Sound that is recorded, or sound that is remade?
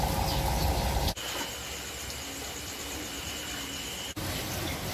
recorded